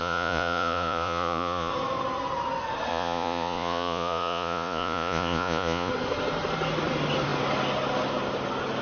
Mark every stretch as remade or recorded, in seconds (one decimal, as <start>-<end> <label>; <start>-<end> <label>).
0.0-1.7 remade; 1.7-2.9 recorded; 2.9-5.9 remade; 5.9-8.8 recorded

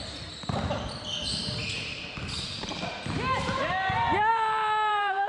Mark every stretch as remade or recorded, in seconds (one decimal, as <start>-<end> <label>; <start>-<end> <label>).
0.0-1.1 remade; 1.1-4.3 recorded; 4.3-5.3 remade

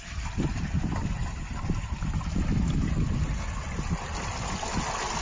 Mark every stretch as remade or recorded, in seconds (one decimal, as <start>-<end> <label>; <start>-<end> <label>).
0.0-5.2 recorded

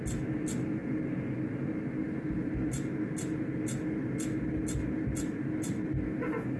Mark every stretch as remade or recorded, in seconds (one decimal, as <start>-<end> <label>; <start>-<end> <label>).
0.0-6.6 recorded

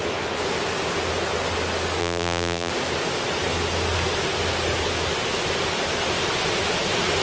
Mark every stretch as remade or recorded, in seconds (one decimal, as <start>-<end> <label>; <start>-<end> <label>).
0.0-2.0 recorded; 2.0-2.7 remade; 2.7-7.2 recorded